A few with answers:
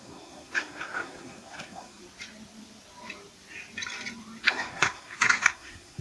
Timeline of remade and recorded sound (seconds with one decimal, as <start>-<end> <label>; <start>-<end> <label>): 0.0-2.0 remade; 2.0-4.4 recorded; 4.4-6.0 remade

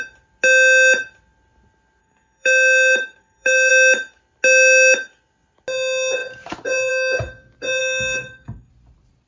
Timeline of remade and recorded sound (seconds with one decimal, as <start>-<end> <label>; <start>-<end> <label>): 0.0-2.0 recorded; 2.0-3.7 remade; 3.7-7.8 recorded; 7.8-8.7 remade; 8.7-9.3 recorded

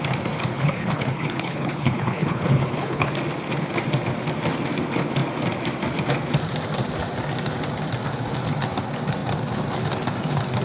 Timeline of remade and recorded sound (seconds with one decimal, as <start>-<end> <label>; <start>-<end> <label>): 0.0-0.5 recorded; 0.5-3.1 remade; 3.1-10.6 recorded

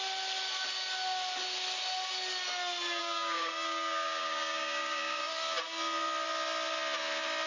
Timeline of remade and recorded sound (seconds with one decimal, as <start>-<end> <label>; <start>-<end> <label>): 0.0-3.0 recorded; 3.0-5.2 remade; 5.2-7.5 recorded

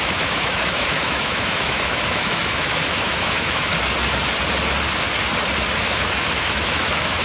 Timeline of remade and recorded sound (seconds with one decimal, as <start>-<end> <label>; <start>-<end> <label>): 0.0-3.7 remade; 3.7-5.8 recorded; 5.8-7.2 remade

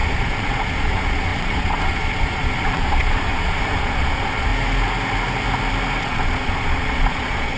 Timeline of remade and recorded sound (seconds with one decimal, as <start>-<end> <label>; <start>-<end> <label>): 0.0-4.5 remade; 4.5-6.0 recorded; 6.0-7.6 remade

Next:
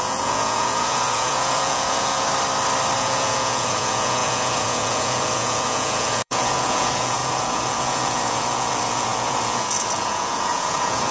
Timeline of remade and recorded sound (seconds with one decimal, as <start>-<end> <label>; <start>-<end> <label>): 0.0-2.3 remade; 2.3-3.0 recorded; 3.0-11.1 remade

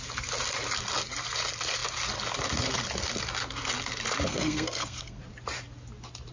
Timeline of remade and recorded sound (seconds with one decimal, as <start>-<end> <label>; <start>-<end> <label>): 0.0-4.3 recorded; 4.3-5.2 remade; 5.2-6.3 recorded